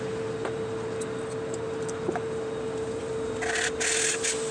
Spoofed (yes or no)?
no